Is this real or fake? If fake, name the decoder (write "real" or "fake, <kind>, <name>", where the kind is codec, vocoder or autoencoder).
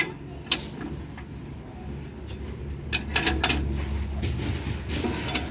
real